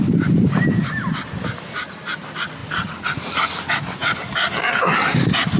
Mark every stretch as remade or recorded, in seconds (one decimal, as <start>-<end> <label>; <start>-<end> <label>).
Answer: 0.0-5.6 recorded